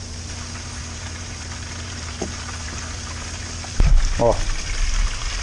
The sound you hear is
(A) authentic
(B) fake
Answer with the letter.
A